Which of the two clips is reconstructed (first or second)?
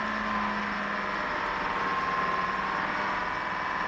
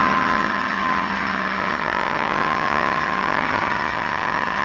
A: second